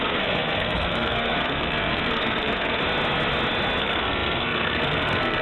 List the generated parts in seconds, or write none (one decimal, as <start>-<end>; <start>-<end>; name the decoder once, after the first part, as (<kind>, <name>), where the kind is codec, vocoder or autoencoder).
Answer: 0.0-2.8 (codec, SNAC); 3.8-5.4

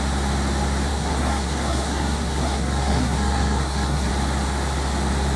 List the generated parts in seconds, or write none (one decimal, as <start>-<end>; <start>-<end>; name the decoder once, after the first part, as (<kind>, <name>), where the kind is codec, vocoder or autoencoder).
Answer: 0.9-4.1 (codec, SNAC)

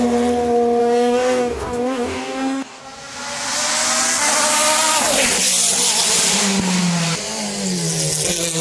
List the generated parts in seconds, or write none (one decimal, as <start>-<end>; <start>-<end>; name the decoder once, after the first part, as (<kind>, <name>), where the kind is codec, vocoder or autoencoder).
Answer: 0.8-2.8 (codec, DAC)

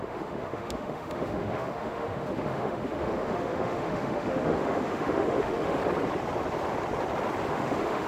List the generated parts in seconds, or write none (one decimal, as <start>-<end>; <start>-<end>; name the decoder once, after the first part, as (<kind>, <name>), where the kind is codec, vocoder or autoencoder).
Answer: 0.0-5.8 (autoencoder, DAC-VAE); 7.5-8.1